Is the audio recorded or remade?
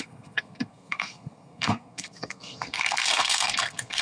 remade